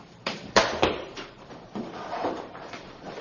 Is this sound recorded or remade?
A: remade